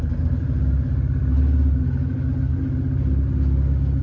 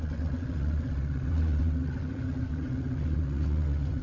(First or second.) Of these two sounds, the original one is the first